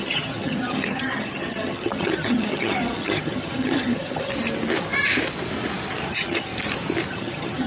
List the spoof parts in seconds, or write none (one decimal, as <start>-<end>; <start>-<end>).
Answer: 0.0-4.3; 6.1-6.5; 7.1-7.7